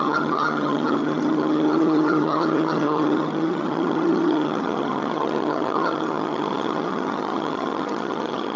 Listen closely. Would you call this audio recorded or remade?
remade